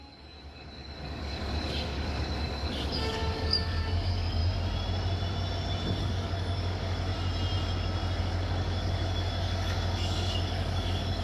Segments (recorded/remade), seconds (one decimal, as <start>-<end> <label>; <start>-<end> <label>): 0.0-4.4 remade; 4.4-6.0 recorded; 6.0-7.1 remade; 7.1-8.2 recorded; 8.2-11.2 remade